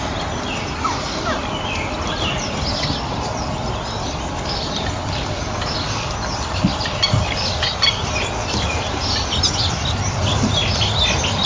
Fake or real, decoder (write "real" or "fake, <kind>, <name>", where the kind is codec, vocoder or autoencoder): real